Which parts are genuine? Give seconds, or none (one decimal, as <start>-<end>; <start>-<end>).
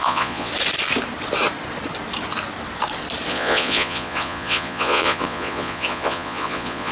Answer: 0.5-3.3